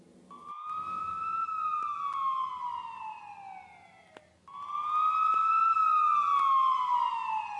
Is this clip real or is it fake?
real